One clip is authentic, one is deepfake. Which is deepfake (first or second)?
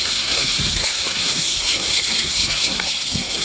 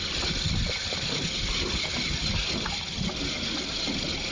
first